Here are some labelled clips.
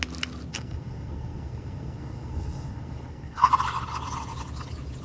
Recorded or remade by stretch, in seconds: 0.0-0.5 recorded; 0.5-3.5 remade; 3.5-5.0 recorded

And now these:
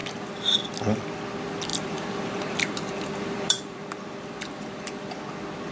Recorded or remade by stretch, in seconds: 0.0-0.6 remade; 0.6-1.7 recorded; 1.7-5.1 remade; 5.1-5.7 recorded

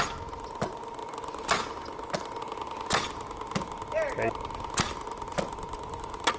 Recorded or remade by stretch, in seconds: 0.0-6.4 recorded

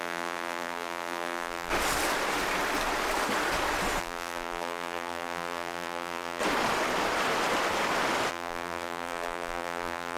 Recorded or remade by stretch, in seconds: 0.0-1.7 remade; 1.7-4.0 recorded; 4.0-6.4 remade; 6.4-8.3 recorded; 8.3-10.2 remade

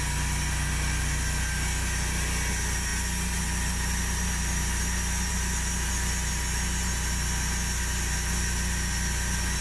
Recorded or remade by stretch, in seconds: 0.0-9.6 recorded